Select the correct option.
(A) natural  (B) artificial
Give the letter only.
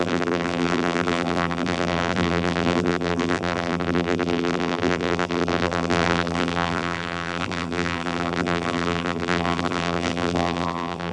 B